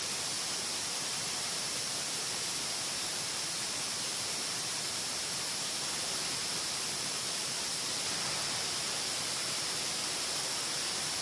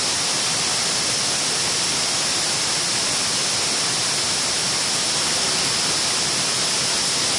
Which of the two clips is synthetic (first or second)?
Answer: first